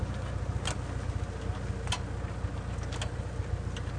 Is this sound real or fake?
real